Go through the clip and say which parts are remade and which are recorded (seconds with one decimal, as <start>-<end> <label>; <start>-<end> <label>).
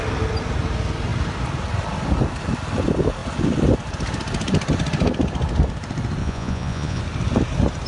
0.0-6.2 recorded; 6.2-7.0 remade; 7.0-7.9 recorded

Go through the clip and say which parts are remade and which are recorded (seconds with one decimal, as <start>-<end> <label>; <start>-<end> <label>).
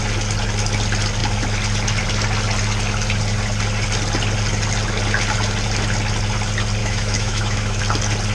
0.0-6.8 recorded; 6.8-7.8 remade; 7.8-8.3 recorded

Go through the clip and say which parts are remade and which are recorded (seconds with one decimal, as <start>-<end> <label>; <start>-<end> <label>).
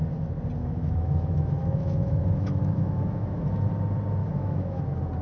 0.0-0.6 recorded; 0.6-3.7 remade; 3.7-4.2 recorded; 4.2-4.8 remade; 4.8-5.2 recorded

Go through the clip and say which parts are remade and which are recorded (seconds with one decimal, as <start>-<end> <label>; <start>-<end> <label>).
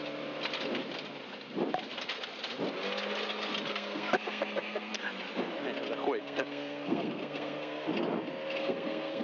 0.0-3.7 recorded; 3.7-4.9 remade; 4.9-6.2 recorded; 6.2-7.9 remade; 7.9-8.6 recorded; 8.6-9.2 remade